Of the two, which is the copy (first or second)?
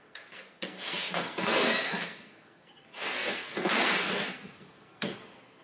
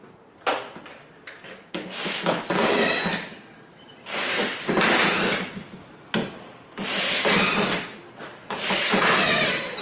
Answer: first